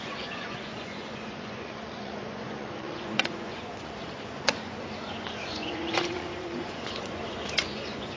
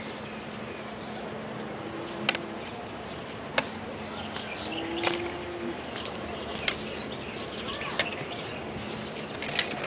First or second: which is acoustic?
second